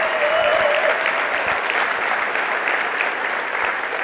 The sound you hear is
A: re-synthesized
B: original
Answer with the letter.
B